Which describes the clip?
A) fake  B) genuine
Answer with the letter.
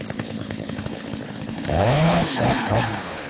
A